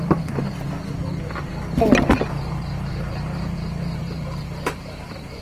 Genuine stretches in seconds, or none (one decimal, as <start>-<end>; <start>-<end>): 0.0-2.1